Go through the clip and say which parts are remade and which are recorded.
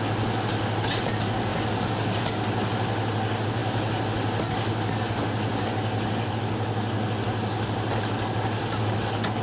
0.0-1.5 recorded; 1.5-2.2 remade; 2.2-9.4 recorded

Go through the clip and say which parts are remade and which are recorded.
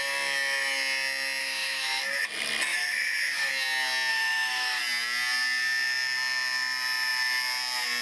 0.0-1.4 recorded; 1.4-2.0 remade; 2.0-2.7 recorded; 2.7-3.5 remade; 3.5-4.1 recorded; 4.1-4.8 remade; 4.8-8.0 recorded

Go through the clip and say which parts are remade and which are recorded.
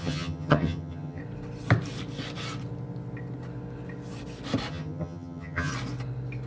0.0-1.2 remade; 1.2-4.7 recorded; 4.7-5.7 remade; 5.7-6.5 recorded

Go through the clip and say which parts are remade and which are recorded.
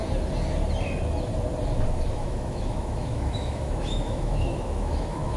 0.0-1.9 recorded; 1.9-5.4 remade